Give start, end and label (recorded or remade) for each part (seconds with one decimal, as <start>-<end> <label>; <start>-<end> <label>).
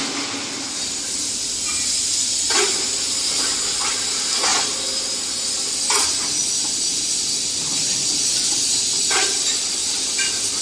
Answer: 0.0-9.8 recorded; 9.8-10.6 remade